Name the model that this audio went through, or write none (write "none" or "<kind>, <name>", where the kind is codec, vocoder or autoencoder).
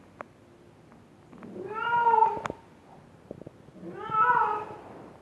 none